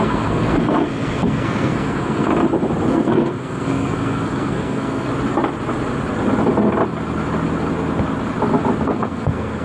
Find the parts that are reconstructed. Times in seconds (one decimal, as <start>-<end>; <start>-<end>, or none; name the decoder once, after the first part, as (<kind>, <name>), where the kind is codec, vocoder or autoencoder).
0.0-2.3 (codec, SNAC); 2.9-5.1; 8.8-9.6